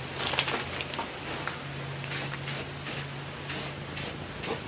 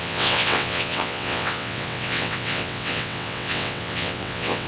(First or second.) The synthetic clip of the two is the second